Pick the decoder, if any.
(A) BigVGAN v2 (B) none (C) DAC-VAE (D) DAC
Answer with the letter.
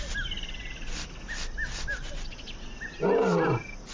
B